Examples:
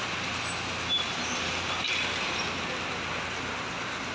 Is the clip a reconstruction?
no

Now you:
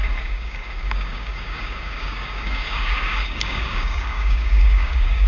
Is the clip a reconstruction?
yes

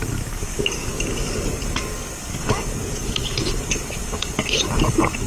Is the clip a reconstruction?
yes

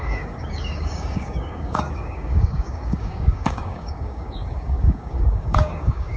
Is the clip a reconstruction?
yes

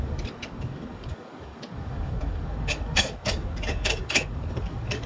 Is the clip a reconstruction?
yes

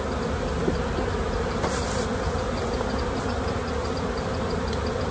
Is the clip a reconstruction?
no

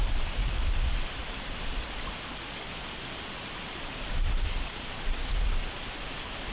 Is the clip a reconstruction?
no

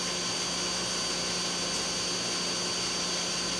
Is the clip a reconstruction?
no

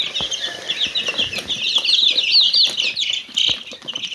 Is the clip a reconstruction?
no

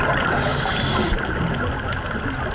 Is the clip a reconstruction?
no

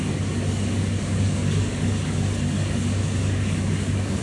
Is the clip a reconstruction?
yes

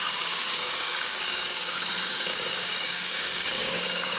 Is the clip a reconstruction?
yes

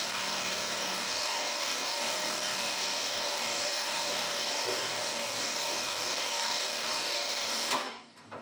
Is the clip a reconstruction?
yes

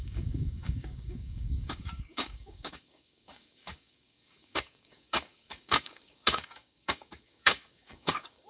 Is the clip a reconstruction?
yes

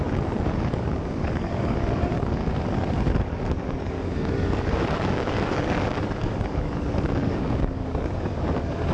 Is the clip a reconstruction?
yes